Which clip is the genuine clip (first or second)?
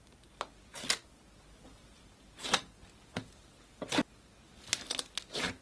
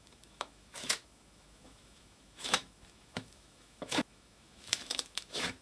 first